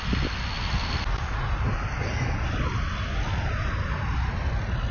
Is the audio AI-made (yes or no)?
no